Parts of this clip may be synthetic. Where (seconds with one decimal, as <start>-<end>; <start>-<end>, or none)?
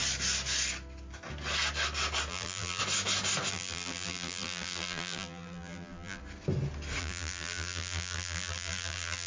2.3-2.8; 3.5-6.2; 7.0-9.3